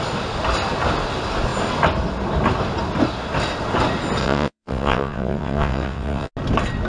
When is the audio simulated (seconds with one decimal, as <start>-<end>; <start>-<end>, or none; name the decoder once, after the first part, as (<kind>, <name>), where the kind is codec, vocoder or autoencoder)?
4.2-6.3 (vocoder, WaveNeXt)